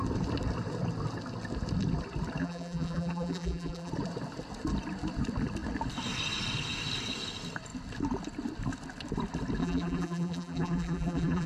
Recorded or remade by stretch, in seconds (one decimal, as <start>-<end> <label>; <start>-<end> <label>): 0.0-2.4 recorded; 2.4-3.9 remade; 3.9-9.6 recorded; 9.6-11.5 remade